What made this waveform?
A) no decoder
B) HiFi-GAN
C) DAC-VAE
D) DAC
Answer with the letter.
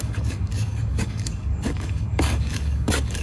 D